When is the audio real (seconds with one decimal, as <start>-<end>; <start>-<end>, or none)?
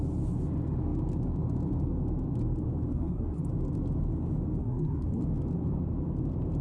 0.0-2.9; 3.4-4.6; 5.2-6.6